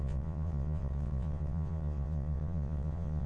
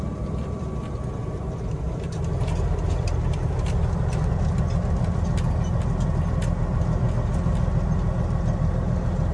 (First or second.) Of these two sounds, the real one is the second